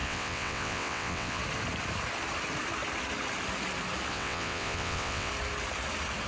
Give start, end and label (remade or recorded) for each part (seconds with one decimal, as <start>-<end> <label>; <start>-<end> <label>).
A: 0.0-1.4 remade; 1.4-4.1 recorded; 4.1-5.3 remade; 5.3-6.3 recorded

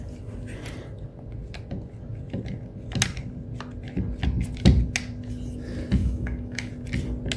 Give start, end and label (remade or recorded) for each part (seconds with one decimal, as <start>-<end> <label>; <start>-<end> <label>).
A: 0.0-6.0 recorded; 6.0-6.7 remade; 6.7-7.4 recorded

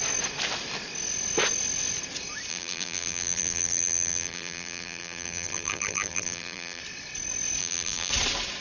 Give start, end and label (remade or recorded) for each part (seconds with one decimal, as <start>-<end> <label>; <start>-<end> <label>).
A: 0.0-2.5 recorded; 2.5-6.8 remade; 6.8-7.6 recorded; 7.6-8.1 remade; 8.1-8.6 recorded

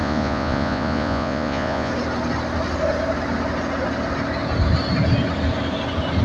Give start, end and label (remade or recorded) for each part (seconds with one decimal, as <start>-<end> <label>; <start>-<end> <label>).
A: 0.0-1.9 remade; 1.9-6.2 recorded

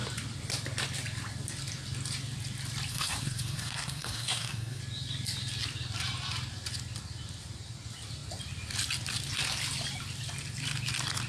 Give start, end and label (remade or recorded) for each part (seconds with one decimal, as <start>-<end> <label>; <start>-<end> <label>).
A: 0.0-2.9 recorded; 2.9-4.8 remade; 4.8-11.3 recorded

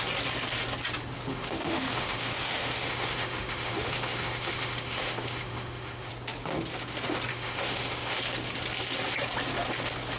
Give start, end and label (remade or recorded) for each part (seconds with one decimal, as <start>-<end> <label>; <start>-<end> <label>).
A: 0.0-1.3 recorded; 1.3-6.1 remade; 6.1-7.3 recorded; 7.3-8.2 remade; 8.2-10.2 recorded